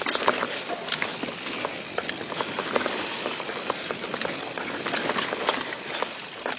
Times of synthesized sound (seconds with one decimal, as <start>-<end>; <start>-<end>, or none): none